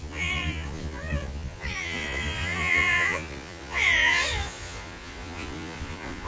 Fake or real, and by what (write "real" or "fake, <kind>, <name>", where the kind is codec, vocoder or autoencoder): fake, vocoder, Vocos